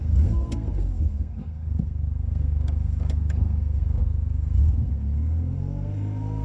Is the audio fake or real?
fake